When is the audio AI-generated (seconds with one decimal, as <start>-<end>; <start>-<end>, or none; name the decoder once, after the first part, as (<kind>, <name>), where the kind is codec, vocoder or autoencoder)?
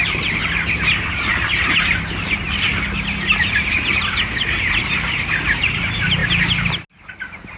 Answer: none